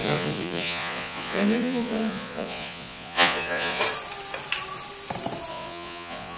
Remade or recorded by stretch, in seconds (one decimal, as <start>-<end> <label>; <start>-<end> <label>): 0.0-3.8 remade; 3.8-5.5 recorded; 5.5-6.4 remade